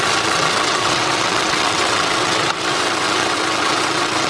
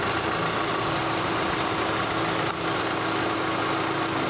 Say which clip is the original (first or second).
second